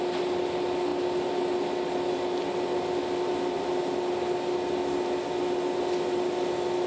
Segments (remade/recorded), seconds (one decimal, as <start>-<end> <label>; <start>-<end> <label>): 0.0-6.9 recorded